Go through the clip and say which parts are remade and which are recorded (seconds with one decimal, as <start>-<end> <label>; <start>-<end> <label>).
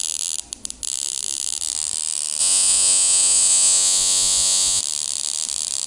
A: 0.0-2.4 recorded; 2.4-4.8 remade; 4.8-5.9 recorded